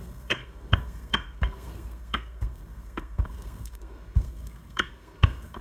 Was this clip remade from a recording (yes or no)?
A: yes